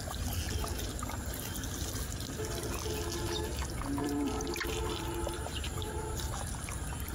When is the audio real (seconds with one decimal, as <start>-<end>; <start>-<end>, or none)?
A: 0.0-4.0; 6.2-7.1